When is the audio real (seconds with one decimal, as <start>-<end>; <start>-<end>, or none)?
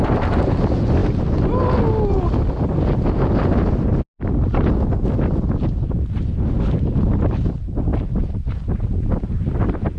0.0-10.0